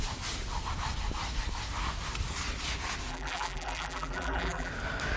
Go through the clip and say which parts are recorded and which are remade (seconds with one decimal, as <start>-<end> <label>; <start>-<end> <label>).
0.0-3.1 recorded; 3.1-4.7 remade; 4.7-5.2 recorded